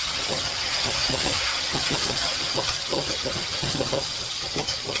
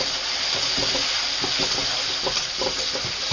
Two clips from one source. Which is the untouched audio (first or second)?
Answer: second